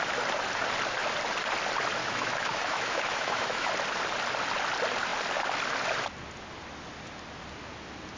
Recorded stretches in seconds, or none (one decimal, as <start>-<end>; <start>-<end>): 0.0-2.0; 3.7-8.2